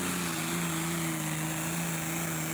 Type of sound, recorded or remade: recorded